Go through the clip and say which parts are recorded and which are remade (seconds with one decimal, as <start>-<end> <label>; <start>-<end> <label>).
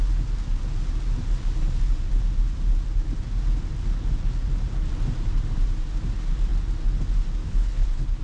0.0-7.4 recorded; 7.4-8.2 remade